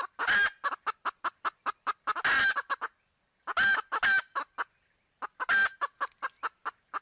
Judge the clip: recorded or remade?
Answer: recorded